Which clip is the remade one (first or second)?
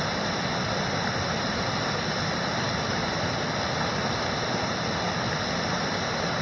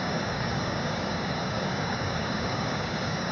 second